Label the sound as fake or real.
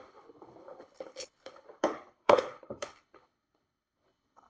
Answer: fake